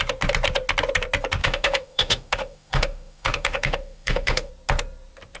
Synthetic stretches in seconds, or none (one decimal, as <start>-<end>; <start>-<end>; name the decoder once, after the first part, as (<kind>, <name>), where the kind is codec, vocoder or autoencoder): 1.4-4.5 (autoencoder, DAC-VAE)